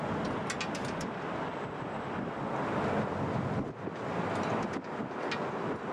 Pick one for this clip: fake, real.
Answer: real